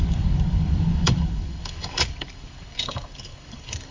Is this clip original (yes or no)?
no